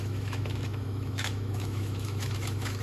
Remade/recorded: remade